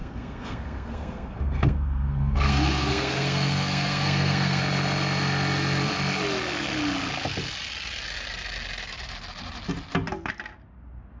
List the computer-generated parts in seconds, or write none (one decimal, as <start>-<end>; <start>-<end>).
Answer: 0.0-4.6